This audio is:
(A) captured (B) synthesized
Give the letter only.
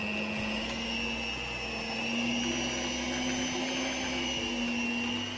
A